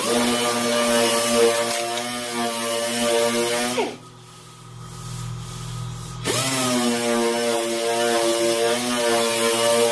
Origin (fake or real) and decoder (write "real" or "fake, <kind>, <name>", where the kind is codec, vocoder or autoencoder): real